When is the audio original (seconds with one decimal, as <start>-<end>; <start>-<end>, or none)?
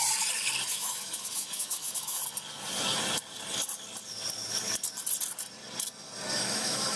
0.0-0.7; 2.2-6.4